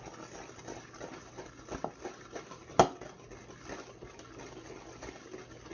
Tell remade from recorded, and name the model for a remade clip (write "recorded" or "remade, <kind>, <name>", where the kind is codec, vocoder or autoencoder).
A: recorded